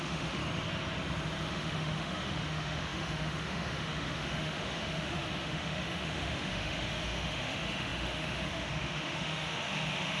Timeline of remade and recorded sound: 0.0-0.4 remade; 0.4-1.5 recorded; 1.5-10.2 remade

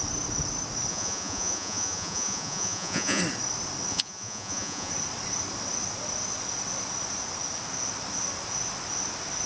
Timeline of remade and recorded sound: 0.0-0.9 recorded; 0.9-3.2 remade; 3.2-3.9 recorded; 3.9-4.9 remade; 4.9-9.5 recorded

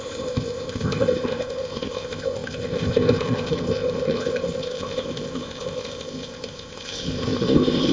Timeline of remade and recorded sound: 0.0-7.9 remade

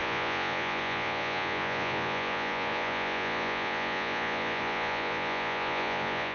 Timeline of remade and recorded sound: 0.0-6.3 remade

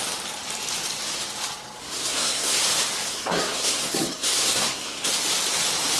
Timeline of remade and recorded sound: 0.0-1.8 recorded; 1.8-2.6 remade; 2.6-3.1 recorded; 3.1-5.1 remade; 5.1-6.0 recorded